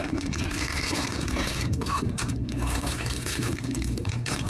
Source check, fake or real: fake